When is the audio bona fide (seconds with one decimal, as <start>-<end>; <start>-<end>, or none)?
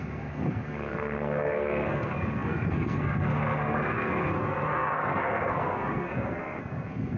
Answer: none